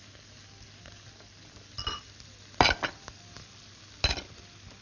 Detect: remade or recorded recorded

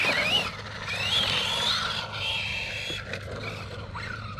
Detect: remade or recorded recorded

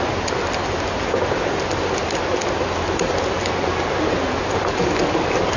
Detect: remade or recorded recorded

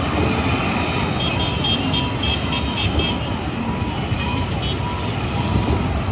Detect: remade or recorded recorded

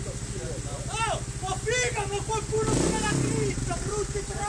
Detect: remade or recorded recorded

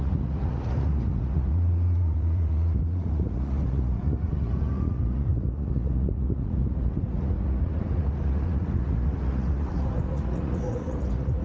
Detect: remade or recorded remade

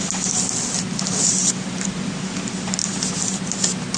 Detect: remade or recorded recorded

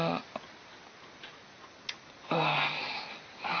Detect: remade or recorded recorded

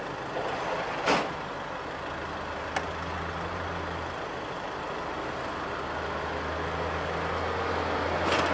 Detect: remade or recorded recorded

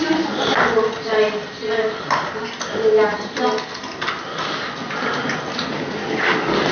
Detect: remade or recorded recorded